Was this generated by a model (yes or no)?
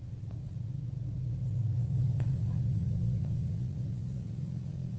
yes